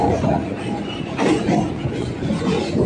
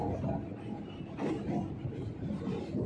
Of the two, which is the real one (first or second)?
second